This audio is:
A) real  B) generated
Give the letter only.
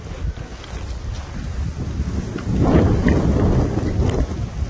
A